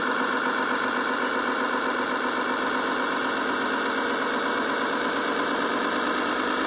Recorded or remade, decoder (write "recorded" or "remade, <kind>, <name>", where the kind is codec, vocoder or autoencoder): recorded